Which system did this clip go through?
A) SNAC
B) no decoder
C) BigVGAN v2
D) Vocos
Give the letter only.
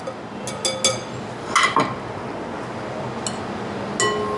B